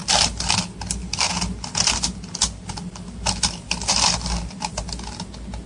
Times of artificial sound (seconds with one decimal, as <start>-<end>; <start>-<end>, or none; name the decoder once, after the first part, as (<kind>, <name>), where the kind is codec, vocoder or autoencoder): 0.0-0.6 (vocoder, BigVGAN v2); 1.0-4.4